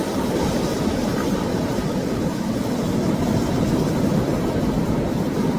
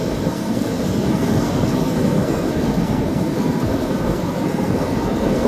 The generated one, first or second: second